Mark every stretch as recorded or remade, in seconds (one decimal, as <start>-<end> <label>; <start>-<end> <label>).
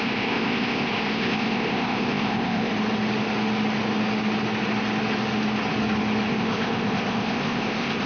0.0-2.7 remade; 2.7-6.3 recorded; 6.3-8.1 remade